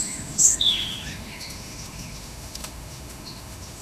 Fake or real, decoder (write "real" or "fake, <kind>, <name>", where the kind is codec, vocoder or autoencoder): fake, autoencoder, DAC-VAE